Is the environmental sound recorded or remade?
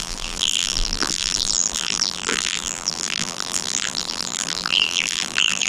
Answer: remade